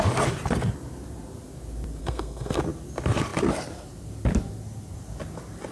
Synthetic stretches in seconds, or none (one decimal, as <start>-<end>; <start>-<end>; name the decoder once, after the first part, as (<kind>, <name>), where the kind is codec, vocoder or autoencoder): 2.0-2.6 (codec, SNAC)

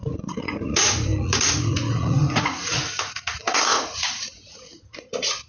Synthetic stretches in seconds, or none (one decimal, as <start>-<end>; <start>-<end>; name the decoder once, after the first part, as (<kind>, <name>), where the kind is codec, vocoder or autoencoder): 0.0-5.5 (vocoder, Vocos)

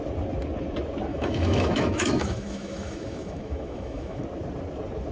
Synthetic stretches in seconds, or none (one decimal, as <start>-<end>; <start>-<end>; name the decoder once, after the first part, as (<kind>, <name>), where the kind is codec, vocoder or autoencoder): 1.1-4.2 (autoencoder, DAC-VAE)

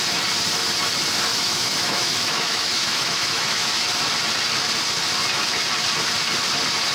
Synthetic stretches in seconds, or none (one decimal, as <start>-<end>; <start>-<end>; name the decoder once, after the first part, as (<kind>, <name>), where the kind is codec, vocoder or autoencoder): 1.3-3.8 (autoencoder, DAC-VAE)

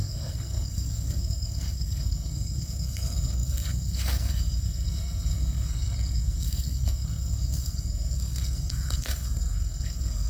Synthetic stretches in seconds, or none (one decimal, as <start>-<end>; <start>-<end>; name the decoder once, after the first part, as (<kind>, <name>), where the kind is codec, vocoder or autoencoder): 0.0-10.3 (codec, SNAC)

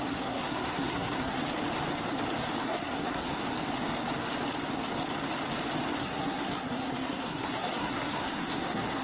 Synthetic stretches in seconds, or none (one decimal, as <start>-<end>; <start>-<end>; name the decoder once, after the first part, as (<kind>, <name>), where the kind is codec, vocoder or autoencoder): 0.0-1.4 (codec, SNAC); 2.6-3.4; 6.0-9.0

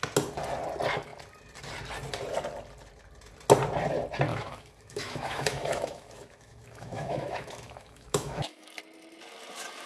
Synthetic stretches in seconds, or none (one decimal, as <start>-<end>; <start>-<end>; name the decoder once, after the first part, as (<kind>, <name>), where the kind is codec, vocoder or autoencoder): 4.3-8.7 (autoencoder, DAC-VAE)

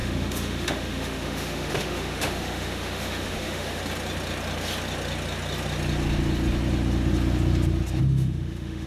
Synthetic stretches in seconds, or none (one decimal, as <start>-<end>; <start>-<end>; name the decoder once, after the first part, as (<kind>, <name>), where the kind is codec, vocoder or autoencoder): 0.0-3.8 (autoencoder, DAC-VAE); 8.0-8.9